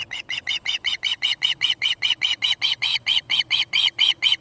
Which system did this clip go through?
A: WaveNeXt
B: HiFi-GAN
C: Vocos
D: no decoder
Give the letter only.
C